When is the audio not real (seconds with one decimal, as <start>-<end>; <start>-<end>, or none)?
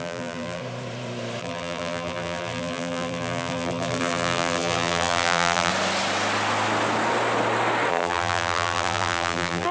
0.0-0.6; 1.4-5.7; 7.9-9.7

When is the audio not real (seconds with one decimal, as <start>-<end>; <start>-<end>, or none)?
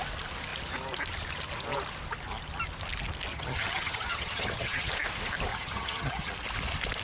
3.3-4.9; 5.5-6.3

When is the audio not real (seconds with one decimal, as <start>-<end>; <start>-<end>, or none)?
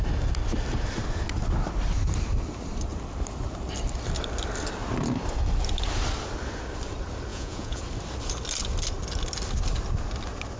7.3-7.8